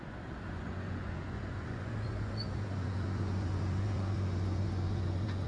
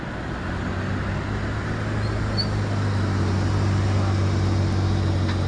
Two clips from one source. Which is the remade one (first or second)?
first